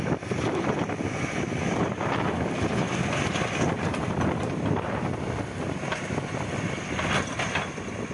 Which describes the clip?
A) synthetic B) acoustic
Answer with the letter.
B